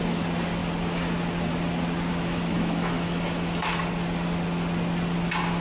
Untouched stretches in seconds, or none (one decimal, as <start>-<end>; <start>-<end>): 0.0-2.1; 3.8-5.6